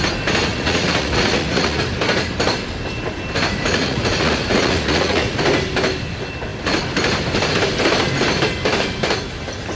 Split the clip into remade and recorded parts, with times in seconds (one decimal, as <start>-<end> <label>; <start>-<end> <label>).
0.0-0.5 recorded; 0.5-1.8 remade; 1.8-3.7 recorded; 3.7-5.4 remade; 5.4-9.8 recorded